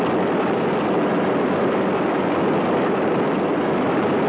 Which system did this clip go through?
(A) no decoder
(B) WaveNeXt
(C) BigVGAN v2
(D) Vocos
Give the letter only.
A